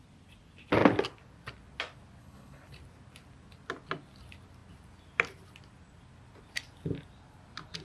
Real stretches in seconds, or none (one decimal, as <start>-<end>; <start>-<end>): 0.0-2.2; 2.7-7.8